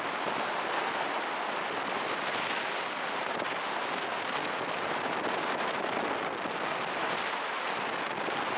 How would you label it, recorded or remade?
recorded